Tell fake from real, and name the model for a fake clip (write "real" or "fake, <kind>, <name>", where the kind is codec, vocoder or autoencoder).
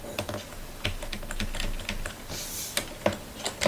real